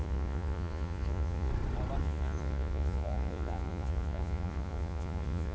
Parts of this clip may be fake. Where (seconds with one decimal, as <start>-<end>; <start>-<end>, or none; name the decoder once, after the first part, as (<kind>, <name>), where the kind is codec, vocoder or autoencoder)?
0.0-1.5 (vocoder, Vocos); 2.0-5.5